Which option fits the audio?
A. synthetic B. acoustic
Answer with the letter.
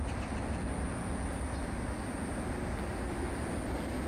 B